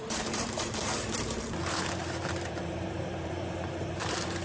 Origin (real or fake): fake